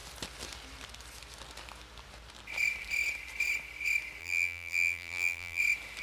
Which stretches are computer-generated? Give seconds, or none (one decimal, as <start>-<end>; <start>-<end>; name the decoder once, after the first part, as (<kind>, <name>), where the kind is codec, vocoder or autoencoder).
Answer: 4.2-5.6 (vocoder, BigVGAN v2)